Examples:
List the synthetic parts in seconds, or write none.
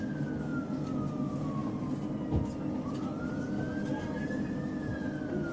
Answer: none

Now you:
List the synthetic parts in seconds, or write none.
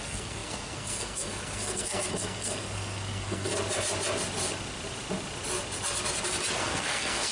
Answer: 0.0-3.5 (codec, SNAC); 6.6-7.3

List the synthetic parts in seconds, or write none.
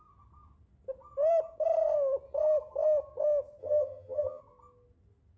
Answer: 3.6-4.4 (vocoder, HiFi-GAN)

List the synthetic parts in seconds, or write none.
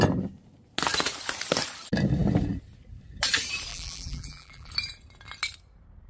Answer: 3.7-4.7 (vocoder, BigVGAN v2)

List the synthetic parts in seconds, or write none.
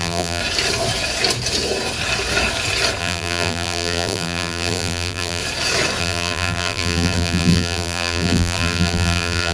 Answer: 0.0-0.4 (vocoder, BigVGAN v2); 3.0-5.4; 6.0-9.5